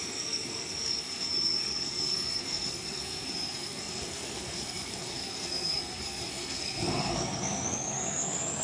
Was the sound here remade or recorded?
remade